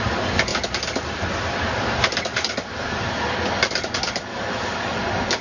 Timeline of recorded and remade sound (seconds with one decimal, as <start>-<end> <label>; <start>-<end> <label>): 0.0-5.4 recorded